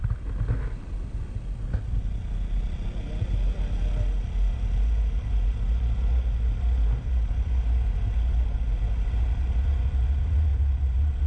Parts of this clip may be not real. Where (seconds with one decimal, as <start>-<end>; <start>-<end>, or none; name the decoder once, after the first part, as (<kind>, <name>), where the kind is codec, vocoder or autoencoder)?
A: none